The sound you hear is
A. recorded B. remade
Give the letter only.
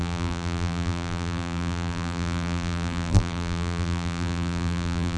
B